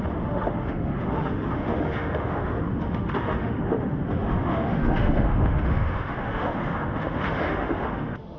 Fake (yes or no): yes